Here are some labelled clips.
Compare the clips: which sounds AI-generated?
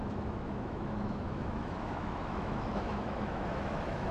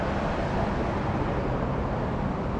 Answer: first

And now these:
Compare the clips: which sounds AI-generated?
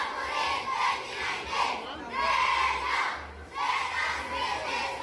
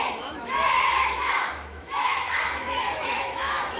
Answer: second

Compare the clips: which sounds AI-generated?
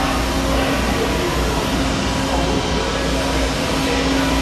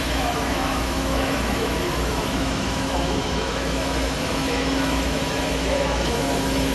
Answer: second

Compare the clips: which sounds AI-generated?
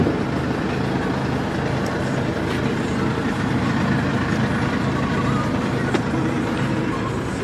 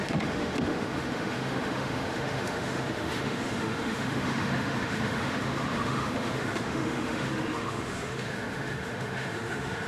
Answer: second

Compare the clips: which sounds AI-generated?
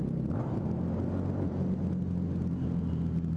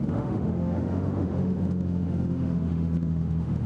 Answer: second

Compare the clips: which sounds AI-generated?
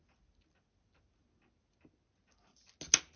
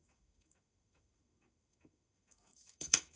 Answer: second